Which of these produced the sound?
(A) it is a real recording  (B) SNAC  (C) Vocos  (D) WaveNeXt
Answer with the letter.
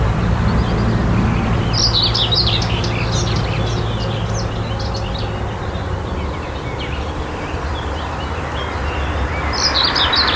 A